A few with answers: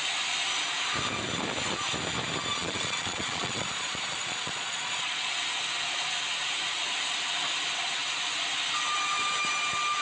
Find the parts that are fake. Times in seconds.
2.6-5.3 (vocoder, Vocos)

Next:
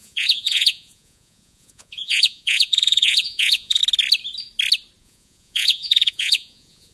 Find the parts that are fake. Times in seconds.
0.0-3.8 (vocoder, Vocos); 5.0-6.9